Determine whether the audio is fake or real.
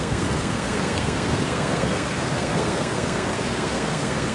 fake